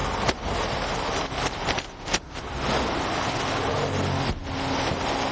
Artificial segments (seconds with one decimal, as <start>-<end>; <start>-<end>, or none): none